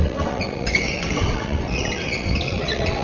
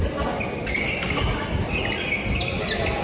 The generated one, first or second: first